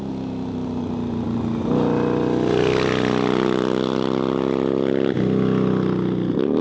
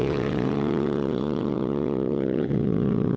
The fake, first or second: second